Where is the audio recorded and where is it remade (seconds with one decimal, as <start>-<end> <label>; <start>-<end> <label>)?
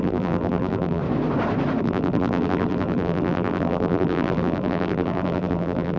0.0-1.0 remade; 1.0-1.8 recorded; 1.8-6.0 remade